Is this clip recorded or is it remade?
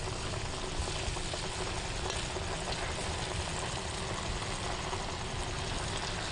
recorded